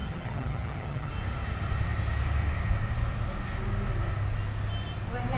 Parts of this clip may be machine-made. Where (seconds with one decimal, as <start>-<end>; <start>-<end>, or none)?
0.0-1.1